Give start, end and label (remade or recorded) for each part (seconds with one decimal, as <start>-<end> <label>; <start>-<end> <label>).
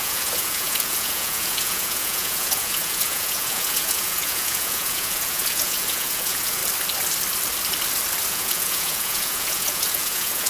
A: 0.0-6.6 remade; 6.6-8.3 recorded; 8.3-10.5 remade